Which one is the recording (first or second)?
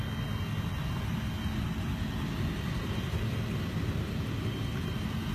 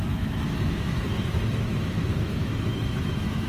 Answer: first